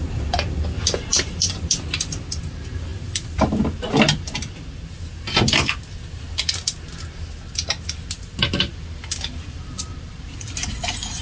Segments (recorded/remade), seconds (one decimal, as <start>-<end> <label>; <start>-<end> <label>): 0.0-1.1 recorded; 1.1-1.7 remade; 1.7-8.7 recorded; 8.7-11.2 remade